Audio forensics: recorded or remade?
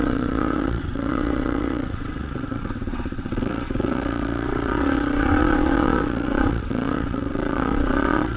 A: remade